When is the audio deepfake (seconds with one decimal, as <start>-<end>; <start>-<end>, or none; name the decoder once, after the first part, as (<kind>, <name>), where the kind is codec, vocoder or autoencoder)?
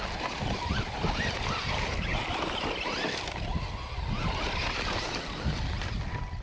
none